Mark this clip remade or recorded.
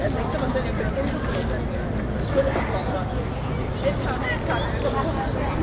recorded